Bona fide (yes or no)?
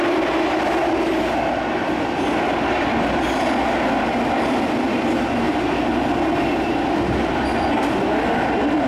yes